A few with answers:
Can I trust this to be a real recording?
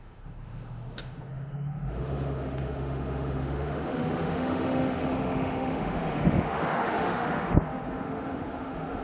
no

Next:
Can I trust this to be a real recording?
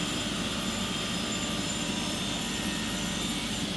no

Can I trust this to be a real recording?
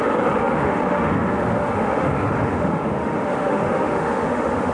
no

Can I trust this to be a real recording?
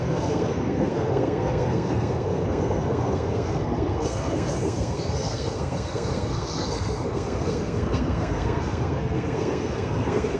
no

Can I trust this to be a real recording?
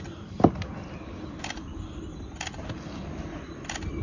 yes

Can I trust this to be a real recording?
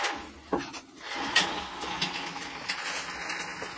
yes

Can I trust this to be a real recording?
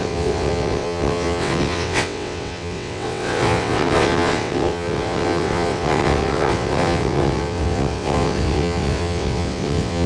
no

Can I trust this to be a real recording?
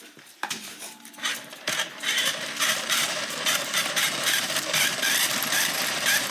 no